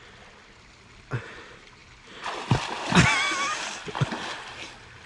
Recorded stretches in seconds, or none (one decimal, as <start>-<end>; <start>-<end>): 0.0-5.1